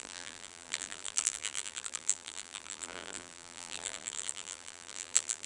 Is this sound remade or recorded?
remade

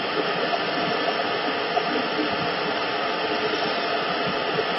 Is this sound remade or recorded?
recorded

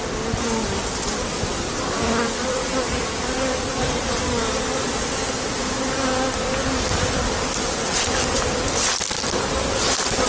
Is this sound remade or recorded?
recorded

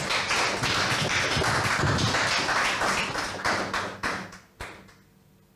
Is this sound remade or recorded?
recorded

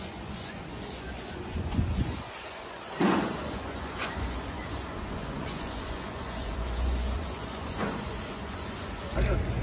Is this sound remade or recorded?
remade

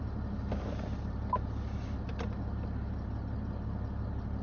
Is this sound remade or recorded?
recorded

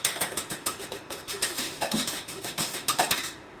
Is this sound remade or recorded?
remade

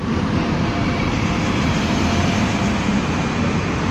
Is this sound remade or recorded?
remade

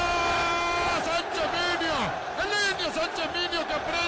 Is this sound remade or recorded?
recorded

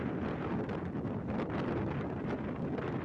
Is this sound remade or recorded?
recorded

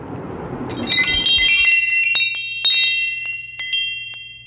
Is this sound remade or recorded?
recorded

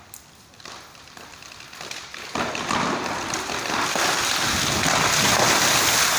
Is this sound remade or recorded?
recorded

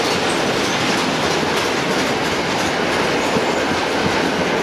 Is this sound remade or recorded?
recorded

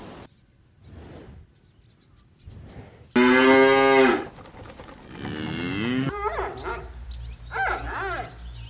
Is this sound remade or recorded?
recorded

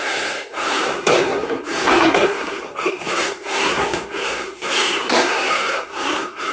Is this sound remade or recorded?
remade